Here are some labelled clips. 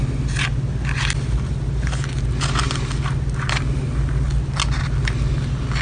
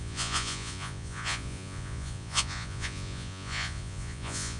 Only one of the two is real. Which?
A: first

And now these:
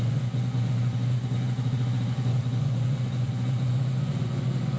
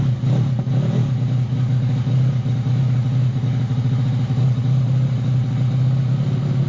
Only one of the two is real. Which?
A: second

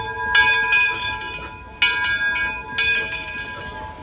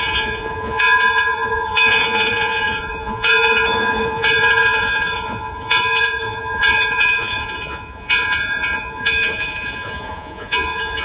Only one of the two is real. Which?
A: first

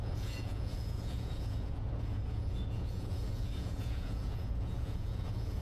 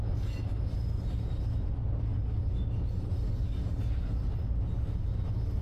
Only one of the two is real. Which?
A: second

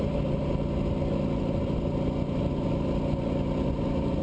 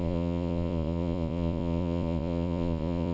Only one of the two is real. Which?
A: first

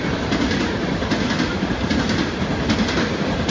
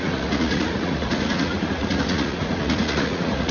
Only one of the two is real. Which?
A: first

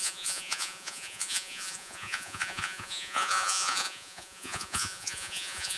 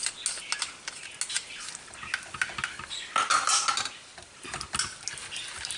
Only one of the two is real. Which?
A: second